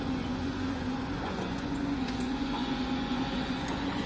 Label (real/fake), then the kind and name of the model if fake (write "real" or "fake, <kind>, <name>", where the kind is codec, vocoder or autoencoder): fake, vocoder, Vocos